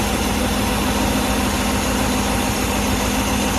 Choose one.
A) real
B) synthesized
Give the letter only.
A